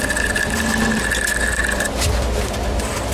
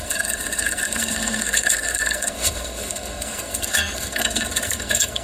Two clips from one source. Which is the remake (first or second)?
second